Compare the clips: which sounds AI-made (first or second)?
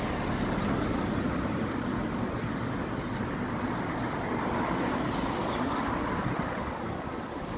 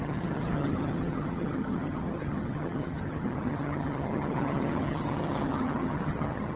second